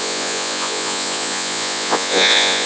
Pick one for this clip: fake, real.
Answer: fake